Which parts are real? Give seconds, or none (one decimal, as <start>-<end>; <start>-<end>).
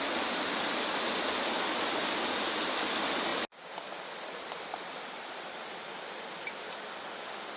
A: 3.3-4.1